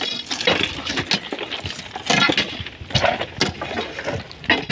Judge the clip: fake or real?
real